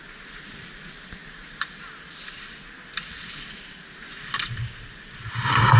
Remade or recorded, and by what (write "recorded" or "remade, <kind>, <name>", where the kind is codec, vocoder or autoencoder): recorded